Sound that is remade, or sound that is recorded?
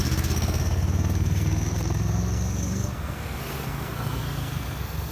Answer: remade